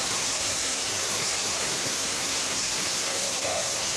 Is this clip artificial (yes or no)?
yes